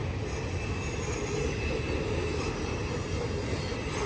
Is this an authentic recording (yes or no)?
yes